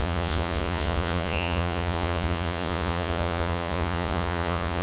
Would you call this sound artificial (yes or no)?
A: yes